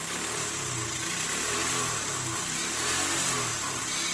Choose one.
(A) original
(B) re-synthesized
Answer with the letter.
A